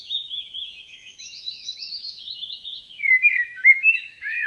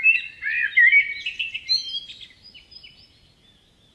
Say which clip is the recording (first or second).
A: second